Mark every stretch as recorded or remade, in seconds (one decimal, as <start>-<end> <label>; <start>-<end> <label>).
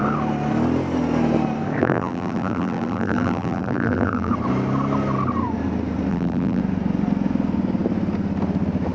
0.0-1.8 recorded; 1.8-4.3 remade; 4.3-6.1 recorded; 6.1-6.6 remade; 6.6-8.9 recorded